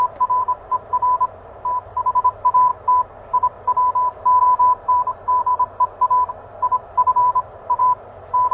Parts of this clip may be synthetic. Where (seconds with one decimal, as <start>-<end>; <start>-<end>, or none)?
0.0-2.7; 4.4-5.5; 6.3-8.5